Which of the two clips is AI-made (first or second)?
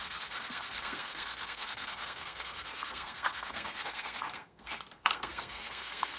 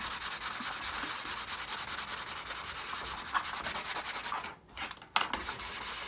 first